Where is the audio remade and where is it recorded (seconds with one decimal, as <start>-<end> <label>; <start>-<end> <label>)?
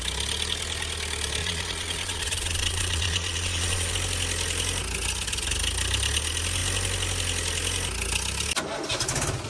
0.0-1.4 recorded; 1.4-3.9 remade; 3.9-9.5 recorded